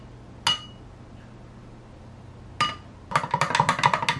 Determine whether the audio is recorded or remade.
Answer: recorded